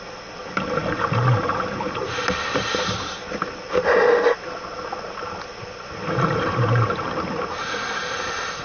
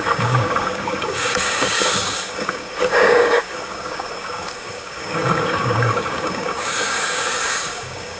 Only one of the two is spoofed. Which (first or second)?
second